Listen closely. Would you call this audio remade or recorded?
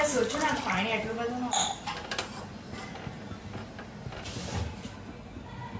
recorded